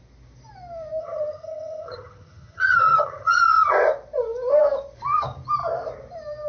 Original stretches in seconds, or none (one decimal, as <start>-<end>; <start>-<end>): 0.0-1.0; 3.7-6.5